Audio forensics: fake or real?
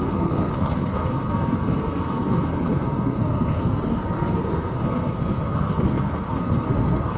fake